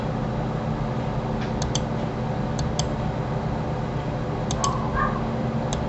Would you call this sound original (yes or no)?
yes